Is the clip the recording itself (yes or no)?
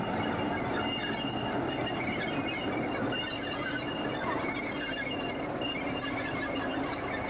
yes